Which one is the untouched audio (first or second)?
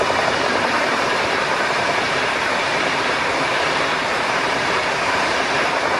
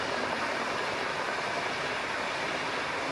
second